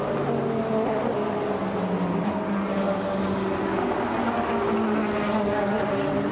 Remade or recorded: recorded